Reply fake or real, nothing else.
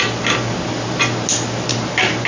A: real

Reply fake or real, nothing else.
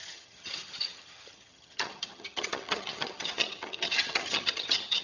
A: fake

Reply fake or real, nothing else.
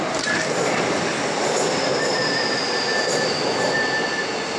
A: real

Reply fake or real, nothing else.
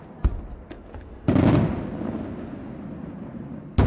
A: real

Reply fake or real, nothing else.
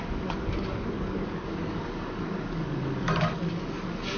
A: fake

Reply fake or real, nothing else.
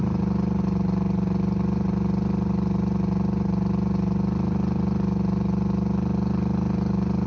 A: real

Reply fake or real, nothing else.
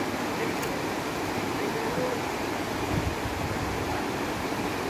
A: real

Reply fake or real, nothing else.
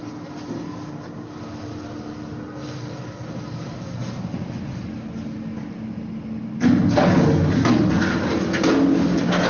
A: real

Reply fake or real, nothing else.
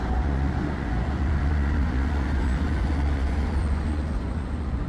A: fake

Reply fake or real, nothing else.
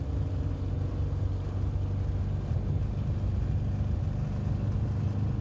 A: real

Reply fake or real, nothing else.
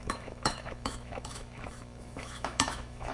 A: fake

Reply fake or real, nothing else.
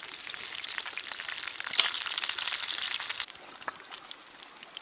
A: real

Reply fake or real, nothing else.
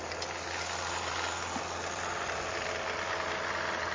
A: real